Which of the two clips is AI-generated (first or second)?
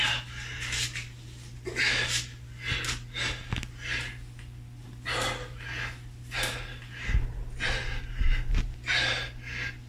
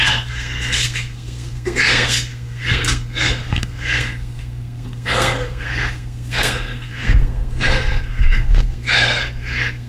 second